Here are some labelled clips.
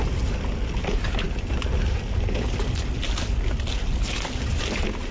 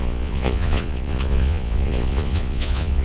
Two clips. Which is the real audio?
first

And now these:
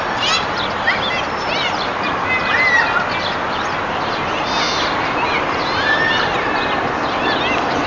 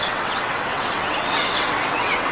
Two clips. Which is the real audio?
first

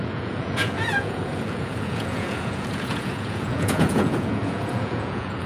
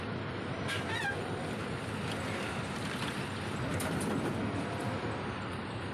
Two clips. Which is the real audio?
second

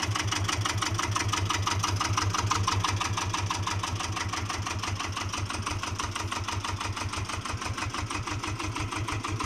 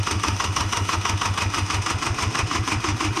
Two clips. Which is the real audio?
first